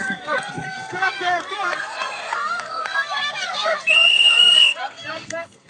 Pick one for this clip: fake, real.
fake